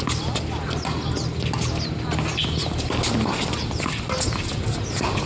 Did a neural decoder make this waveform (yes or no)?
no